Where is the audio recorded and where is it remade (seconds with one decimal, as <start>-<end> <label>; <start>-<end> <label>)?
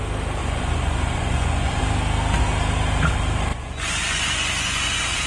0.0-0.4 recorded; 0.4-1.8 remade; 1.8-3.5 recorded; 3.5-5.3 remade